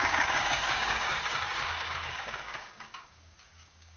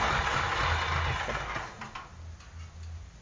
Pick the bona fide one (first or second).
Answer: second